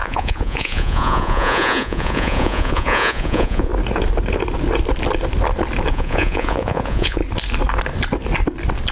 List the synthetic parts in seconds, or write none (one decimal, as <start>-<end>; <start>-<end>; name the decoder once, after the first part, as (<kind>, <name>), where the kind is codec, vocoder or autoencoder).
0.0-3.7 (vocoder, Vocos); 5.9-7.2